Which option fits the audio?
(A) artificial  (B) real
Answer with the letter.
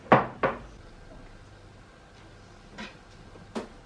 B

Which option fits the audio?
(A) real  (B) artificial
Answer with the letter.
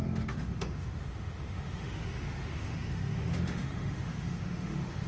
B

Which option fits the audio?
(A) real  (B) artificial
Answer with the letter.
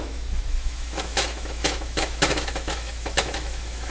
B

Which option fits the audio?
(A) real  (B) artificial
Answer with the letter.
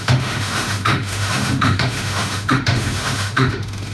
B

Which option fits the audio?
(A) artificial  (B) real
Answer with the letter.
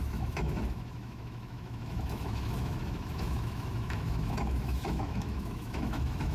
A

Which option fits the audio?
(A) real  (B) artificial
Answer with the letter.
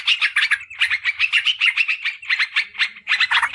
A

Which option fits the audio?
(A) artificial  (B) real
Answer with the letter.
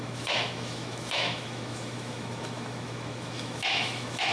A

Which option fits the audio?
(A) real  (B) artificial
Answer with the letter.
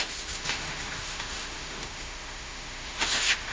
B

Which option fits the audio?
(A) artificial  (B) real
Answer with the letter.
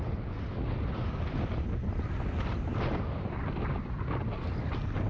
B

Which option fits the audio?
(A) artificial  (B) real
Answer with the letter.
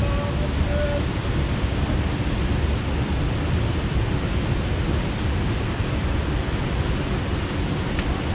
B